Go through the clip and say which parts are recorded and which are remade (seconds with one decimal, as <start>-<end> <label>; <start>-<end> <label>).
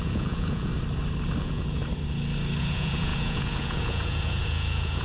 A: 0.0-0.7 remade; 0.7-1.4 recorded; 1.4-1.8 remade; 1.8-2.6 recorded; 2.6-5.0 remade